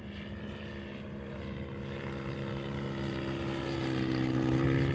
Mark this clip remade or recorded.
recorded